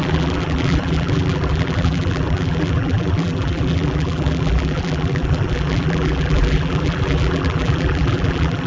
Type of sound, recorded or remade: remade